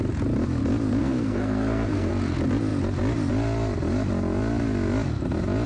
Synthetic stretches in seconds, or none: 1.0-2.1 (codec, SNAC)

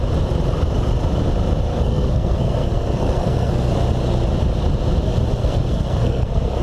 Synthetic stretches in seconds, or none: 1.7-3.7 (codec, SNAC); 5.4-6.6

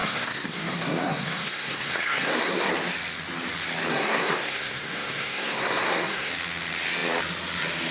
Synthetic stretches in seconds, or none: 0.0-2.7 (codec, SNAC); 3.9-6.3

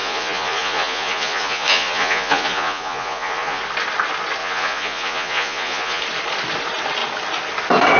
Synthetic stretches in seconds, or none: 0.0-3.6 (vocoder, Vocos); 4.4-6.0

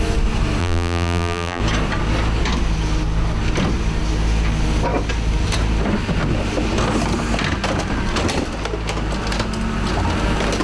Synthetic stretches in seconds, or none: 0.6-1.6 (vocoder, BigVGAN v2)

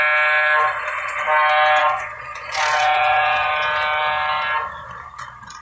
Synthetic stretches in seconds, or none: 1.8-3.5 (vocoder, Vocos)

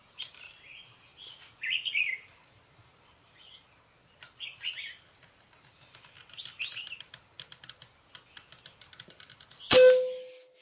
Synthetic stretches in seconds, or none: none